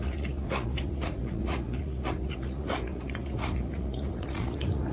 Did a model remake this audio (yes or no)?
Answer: yes